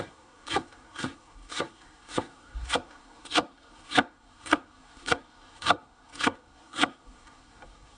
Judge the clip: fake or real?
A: fake